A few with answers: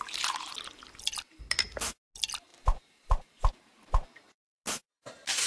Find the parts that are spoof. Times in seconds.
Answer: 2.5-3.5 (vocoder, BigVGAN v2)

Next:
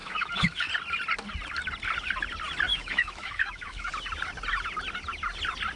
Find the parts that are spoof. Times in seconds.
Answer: 0.0-0.7 (autoencoder, DAC-VAE); 2.7-3.9

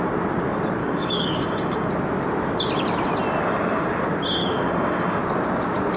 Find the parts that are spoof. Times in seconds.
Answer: 0.8-1.9 (codec, DAC); 4.4-5.2

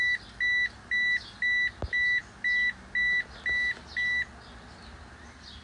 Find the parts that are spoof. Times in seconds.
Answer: none